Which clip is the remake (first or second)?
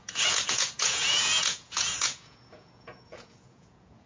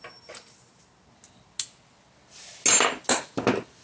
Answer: first